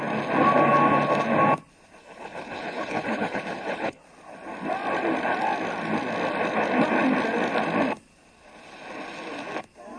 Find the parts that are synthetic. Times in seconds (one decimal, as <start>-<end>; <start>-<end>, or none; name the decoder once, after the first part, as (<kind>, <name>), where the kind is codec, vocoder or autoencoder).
2.0-4.0 (codec, HILCodec)